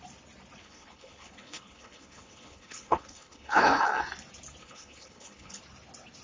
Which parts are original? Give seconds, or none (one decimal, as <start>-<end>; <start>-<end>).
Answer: 0.0-0.6; 4.0-4.6; 5.6-6.2